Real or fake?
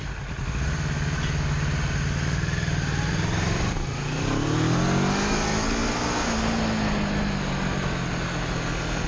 real